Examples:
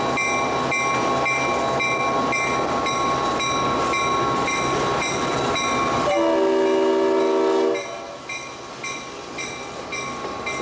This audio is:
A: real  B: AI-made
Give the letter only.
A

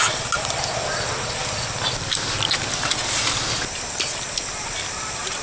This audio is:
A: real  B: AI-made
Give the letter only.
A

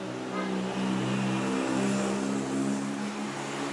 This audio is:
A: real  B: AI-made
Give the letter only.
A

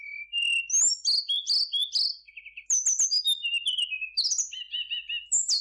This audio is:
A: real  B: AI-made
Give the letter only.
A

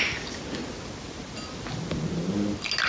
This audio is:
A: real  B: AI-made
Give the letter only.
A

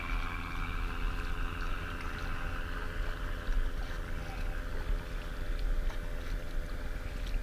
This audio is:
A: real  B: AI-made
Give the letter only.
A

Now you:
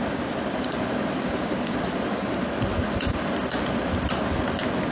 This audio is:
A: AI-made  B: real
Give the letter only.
B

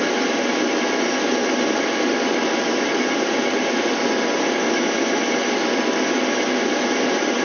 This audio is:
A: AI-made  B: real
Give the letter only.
B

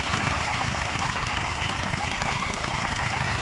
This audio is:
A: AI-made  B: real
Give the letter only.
A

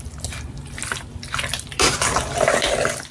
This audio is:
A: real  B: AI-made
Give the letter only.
A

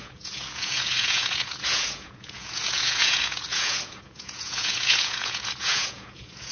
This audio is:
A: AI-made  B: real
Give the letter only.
A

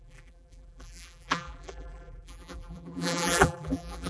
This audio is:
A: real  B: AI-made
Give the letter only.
B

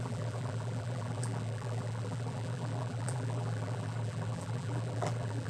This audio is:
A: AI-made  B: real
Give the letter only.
A